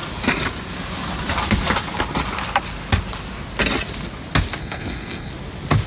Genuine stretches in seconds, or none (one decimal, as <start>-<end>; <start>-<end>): 0.0-4.6; 5.3-5.9